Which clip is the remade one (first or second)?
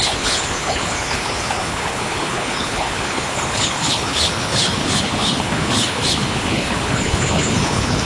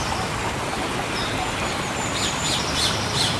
first